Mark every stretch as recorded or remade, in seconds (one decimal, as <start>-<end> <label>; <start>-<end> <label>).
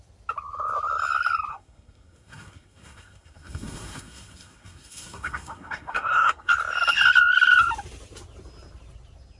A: 0.0-1.5 recorded; 1.5-6.5 remade; 6.5-9.4 recorded